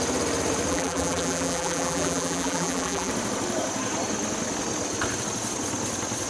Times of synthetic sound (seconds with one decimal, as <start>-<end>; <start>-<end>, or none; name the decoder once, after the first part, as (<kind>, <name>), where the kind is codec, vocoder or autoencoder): 0.7-3.1 (vocoder, BigVGAN v2)